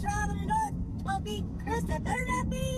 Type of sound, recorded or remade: remade